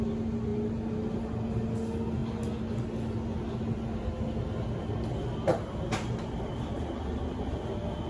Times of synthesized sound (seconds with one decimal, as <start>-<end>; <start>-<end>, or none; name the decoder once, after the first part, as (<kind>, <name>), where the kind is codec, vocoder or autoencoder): 5.5-7.1 (vocoder, BigVGAN v2)